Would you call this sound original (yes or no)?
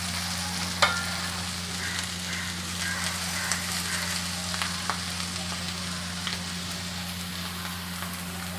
yes